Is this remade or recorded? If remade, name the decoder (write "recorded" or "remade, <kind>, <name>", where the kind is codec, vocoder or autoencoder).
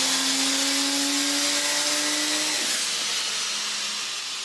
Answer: recorded